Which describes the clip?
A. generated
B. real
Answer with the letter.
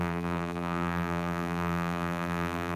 A